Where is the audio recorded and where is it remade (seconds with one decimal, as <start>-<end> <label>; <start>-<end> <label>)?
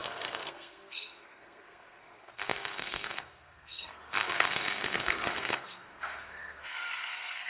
0.0-7.5 remade